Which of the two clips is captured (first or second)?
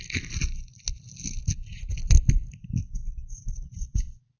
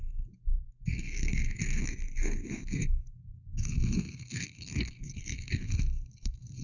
first